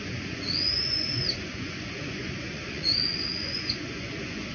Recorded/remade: remade